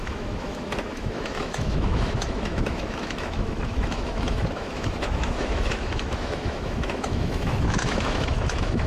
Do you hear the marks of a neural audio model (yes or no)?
yes